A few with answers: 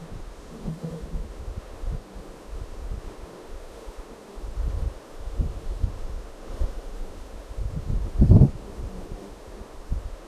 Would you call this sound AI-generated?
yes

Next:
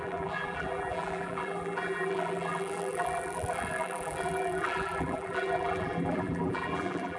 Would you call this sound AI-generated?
yes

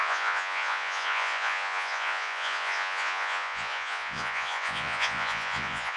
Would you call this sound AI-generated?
yes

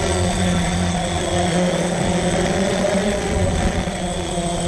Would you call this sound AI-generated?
yes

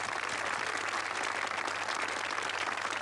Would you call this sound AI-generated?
no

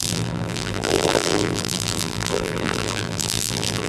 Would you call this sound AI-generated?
yes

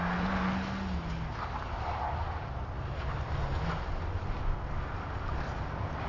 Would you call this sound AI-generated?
no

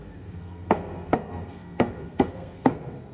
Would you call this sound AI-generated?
yes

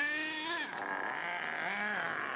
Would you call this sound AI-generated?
no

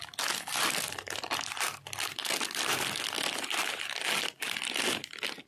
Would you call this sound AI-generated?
no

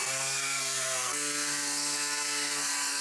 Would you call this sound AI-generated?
yes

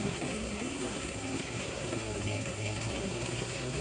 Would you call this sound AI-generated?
yes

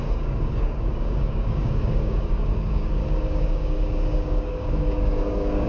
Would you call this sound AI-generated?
yes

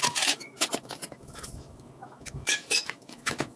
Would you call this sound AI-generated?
yes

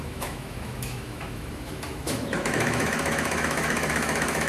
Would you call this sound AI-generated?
yes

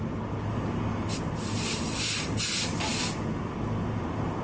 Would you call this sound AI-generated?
no